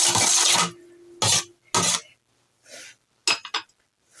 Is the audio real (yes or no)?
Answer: yes